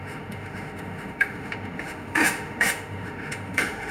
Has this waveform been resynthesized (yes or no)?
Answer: yes